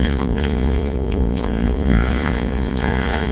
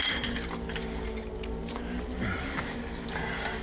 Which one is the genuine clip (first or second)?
second